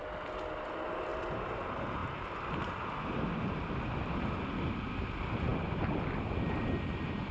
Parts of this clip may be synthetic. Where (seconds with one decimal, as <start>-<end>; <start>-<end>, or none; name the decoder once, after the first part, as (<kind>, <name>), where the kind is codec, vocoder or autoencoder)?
2.0-3.7 (vocoder, BigVGAN v2)